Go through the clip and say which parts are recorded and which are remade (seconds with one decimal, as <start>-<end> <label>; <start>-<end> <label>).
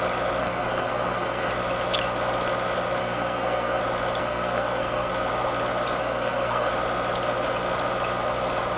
0.0-0.4 recorded; 0.4-1.5 remade; 1.5-3.0 recorded; 3.0-3.8 remade; 3.8-4.2 recorded; 4.2-5.1 remade; 5.1-6.0 recorded; 6.0-6.7 remade; 6.7-8.8 recorded